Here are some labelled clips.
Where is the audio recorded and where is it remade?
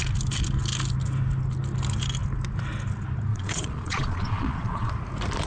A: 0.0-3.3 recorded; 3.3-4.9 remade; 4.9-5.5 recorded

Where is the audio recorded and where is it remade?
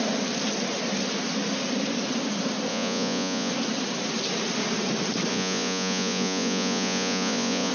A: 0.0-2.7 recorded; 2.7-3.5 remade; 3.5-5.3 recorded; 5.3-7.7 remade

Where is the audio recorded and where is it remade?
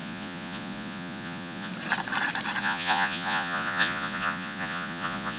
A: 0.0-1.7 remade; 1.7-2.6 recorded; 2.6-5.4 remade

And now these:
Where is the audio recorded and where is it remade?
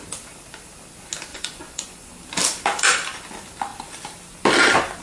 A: 0.0-1.3 recorded; 1.3-2.1 remade; 2.1-5.0 recorded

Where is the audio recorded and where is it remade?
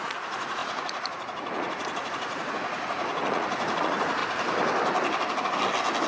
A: 0.0-4.2 remade; 4.2-6.1 recorded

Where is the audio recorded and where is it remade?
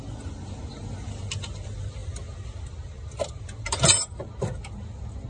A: 0.0-5.3 recorded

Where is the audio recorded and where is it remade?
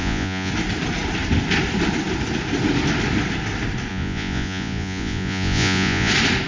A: 0.0-0.5 remade; 0.5-3.9 recorded; 3.9-6.1 remade; 6.1-6.5 recorded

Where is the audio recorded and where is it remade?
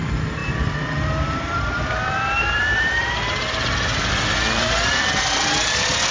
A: 0.0-6.1 recorded